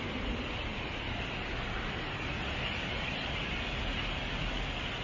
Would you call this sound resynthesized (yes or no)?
no